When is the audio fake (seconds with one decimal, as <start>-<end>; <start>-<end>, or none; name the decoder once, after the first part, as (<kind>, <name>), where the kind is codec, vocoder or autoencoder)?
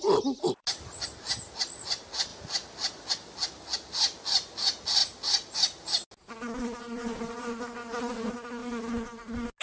none